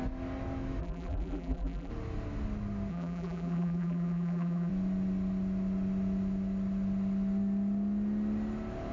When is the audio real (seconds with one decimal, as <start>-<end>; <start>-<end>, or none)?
0.0-0.8; 1.9-2.9; 4.7-8.9